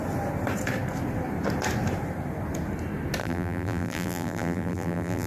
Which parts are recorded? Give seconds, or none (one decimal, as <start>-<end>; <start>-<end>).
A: 0.0-3.2